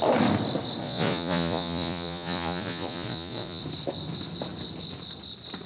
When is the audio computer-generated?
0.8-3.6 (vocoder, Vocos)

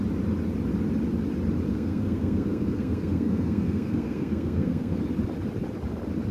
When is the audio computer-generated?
1.7-5.0 (codec, SNAC)

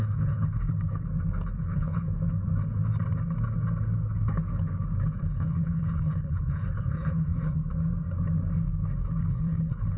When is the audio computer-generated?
0.0-0.7 (codec, HILCodec); 1.6-2.1; 5.2-7.6; 9.2-10.0